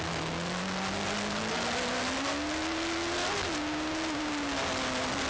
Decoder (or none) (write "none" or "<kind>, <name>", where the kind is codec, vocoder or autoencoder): none